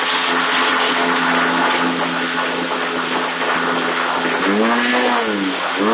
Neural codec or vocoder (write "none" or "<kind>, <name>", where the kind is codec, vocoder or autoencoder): none